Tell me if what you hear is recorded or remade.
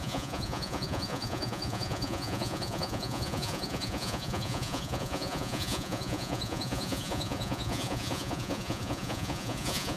remade